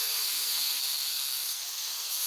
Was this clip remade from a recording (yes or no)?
yes